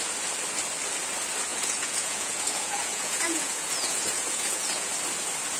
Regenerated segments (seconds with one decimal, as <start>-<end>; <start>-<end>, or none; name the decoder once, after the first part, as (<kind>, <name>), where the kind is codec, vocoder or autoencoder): 1.5-4.9 (vocoder, Vocos)